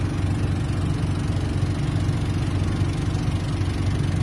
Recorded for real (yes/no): yes